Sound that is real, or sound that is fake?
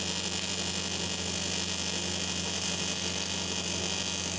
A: real